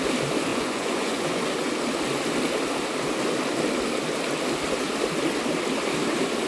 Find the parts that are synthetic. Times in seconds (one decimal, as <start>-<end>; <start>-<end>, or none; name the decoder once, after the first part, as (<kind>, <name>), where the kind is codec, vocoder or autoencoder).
0.5-1.4 (vocoder, Vocos)